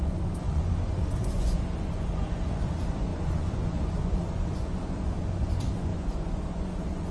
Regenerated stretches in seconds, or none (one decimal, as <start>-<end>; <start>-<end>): 0.0-7.1